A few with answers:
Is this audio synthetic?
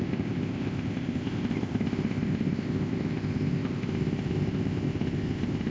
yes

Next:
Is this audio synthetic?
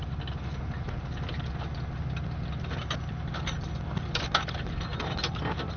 no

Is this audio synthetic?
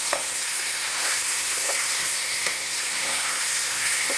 yes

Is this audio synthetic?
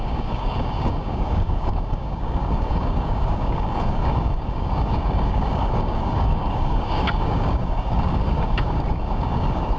yes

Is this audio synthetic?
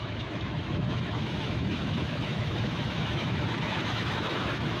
yes